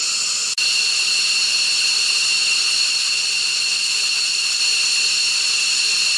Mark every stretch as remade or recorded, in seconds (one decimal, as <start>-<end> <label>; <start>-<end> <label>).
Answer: 0.0-2.9 recorded; 2.9-4.6 remade; 4.6-6.2 recorded